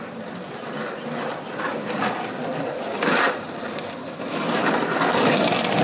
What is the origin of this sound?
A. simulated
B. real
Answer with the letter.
B